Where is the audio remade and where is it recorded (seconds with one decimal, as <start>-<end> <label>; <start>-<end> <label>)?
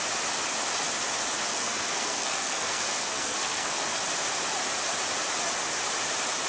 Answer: 0.0-1.5 recorded; 1.5-4.0 remade; 4.0-6.5 recorded